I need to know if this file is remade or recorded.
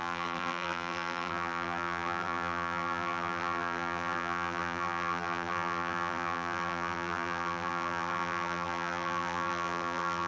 remade